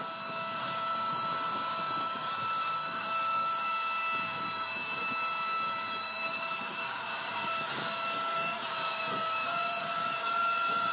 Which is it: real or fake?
fake